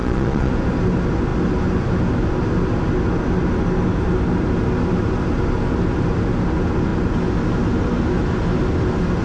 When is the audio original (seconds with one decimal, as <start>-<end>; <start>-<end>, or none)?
0.5-9.2